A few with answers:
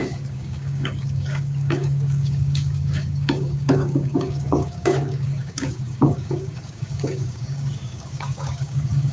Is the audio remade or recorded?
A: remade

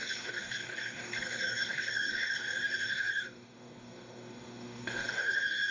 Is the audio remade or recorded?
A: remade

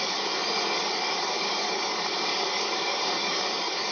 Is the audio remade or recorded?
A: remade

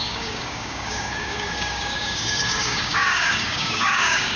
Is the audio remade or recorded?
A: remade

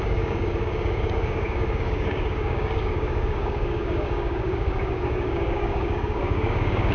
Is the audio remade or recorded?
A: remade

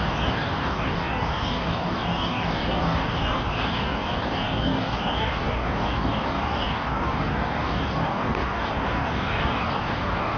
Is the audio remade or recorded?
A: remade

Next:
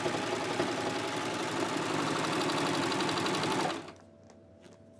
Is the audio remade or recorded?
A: recorded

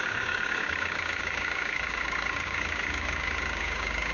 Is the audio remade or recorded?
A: remade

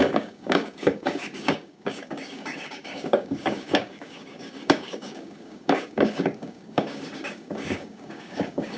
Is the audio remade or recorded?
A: remade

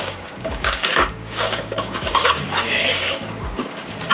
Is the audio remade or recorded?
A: remade